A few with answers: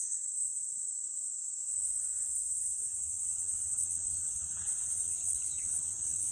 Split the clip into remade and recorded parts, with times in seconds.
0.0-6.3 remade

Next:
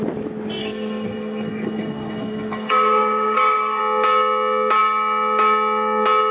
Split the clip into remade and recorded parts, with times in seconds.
0.0-0.6 recorded; 0.6-3.8 remade; 3.8-6.3 recorded